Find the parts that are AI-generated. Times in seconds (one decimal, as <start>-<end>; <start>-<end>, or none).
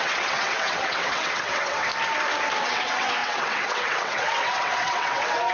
0.0-1.9; 2.6-5.5